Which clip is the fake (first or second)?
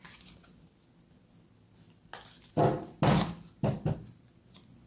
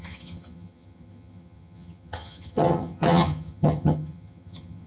second